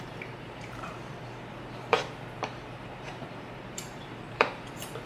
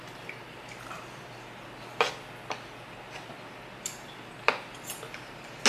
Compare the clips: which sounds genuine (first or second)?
second